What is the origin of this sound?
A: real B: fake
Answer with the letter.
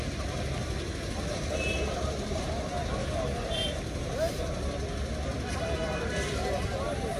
A